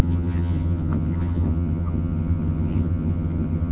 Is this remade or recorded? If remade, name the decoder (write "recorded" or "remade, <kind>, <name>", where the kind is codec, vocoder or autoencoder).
remade, vocoder, HiFi-GAN